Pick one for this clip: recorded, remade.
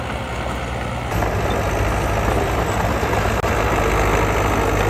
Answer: recorded